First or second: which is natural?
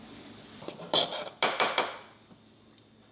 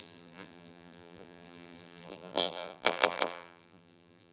first